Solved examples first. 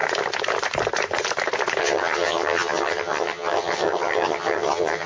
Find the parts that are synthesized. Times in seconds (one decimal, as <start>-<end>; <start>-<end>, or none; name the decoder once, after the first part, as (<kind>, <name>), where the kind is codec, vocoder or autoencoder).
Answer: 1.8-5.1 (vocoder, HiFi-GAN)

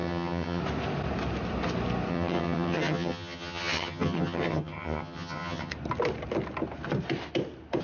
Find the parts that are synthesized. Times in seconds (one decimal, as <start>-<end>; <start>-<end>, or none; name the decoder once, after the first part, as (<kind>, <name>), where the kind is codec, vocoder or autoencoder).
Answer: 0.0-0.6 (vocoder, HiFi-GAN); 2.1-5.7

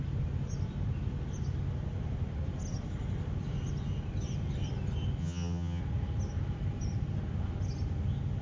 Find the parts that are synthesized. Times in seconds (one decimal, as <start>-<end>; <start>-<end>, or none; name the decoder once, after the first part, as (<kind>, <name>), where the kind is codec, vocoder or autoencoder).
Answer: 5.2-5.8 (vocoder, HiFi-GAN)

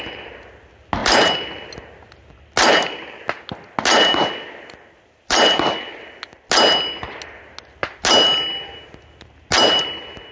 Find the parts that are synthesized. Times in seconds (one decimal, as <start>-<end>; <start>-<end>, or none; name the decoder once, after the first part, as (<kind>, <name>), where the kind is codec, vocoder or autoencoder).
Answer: none

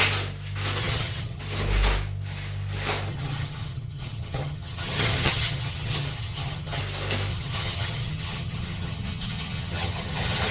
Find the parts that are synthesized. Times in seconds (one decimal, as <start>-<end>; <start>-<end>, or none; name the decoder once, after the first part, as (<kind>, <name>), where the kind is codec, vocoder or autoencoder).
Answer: 0.8-1.4 (vocoder, HiFi-GAN); 3.1-6.8; 7.3-10.5

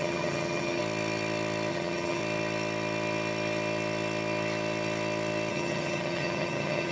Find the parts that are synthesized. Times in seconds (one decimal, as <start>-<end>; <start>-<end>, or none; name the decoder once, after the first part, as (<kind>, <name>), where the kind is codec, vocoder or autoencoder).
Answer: 0.0-0.8 (vocoder, HiFi-GAN); 1.7-2.2; 5.5-6.9